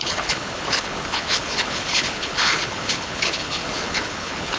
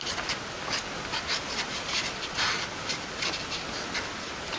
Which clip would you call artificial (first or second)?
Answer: first